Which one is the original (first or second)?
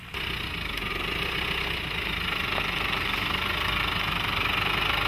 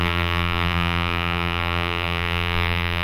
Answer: first